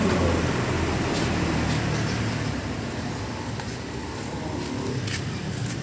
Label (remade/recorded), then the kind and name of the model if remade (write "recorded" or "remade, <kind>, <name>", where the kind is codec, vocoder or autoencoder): recorded